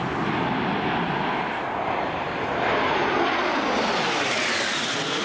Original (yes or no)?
yes